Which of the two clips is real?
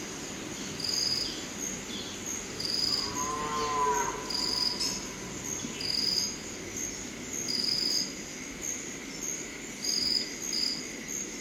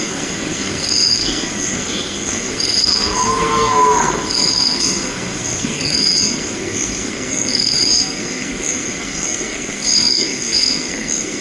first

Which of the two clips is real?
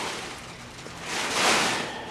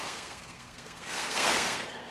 first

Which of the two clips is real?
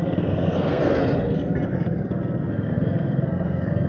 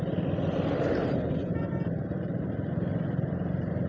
second